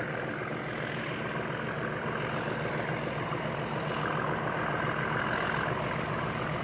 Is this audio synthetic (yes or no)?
no